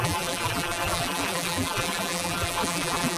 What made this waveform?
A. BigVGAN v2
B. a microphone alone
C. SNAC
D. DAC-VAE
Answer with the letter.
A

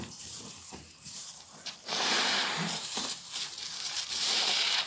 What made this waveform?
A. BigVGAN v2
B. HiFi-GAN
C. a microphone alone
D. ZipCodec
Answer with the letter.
A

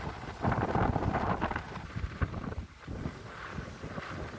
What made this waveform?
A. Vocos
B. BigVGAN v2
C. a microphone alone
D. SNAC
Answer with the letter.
C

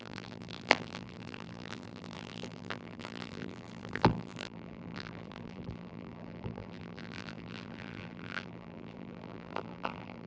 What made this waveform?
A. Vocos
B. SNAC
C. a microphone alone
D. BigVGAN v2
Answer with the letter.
D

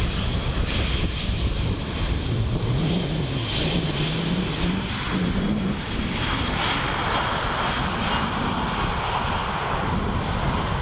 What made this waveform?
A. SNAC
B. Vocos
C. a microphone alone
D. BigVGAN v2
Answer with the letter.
C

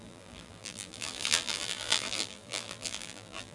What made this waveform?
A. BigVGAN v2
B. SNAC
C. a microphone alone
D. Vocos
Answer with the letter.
A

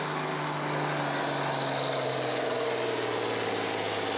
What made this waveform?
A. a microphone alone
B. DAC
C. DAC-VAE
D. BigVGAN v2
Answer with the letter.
A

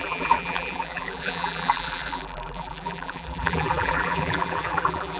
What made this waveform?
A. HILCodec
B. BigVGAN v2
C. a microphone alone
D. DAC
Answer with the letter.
B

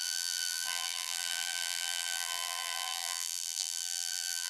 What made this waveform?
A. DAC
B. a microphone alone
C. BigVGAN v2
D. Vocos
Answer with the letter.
C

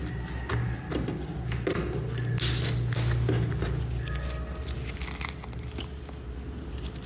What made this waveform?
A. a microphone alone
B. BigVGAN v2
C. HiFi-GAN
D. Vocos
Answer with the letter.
A